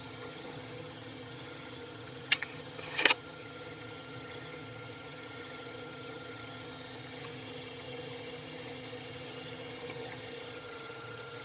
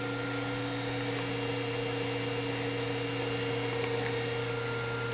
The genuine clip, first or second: second